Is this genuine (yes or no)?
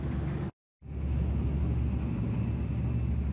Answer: yes